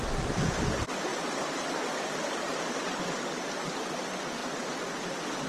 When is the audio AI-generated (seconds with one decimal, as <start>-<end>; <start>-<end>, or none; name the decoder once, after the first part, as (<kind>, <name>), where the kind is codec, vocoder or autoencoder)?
none